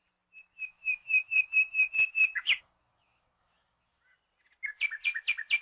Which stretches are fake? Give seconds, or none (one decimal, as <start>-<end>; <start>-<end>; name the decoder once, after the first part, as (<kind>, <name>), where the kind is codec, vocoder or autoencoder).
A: 0.7-1.9 (autoencoder, DAC-VAE); 2.3-4.0